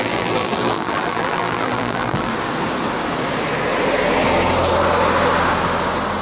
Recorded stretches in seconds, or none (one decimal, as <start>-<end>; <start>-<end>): 2.3-6.2